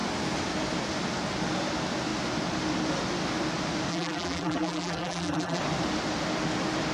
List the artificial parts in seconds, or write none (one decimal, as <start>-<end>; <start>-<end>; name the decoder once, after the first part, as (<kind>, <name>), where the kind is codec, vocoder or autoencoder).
3.9-5.6 (vocoder, BigVGAN v2)